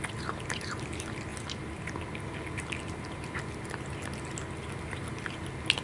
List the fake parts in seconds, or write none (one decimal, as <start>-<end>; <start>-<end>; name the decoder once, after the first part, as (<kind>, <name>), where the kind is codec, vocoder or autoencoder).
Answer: none